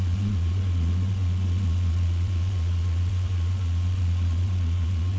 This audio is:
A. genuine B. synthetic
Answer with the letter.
B